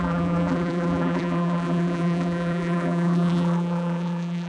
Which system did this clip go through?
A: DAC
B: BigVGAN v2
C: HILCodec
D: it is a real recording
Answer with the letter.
B